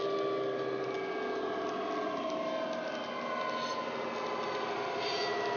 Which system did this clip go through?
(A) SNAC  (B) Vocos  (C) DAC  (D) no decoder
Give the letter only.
D